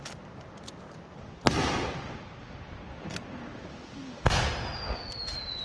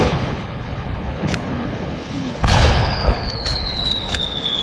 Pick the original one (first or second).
first